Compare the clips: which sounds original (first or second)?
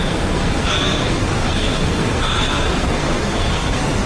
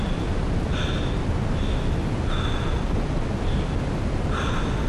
second